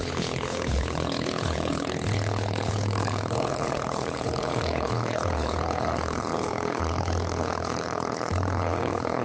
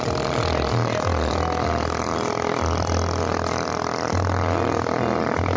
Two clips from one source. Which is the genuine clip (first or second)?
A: second